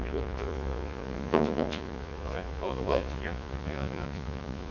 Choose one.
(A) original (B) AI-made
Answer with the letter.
B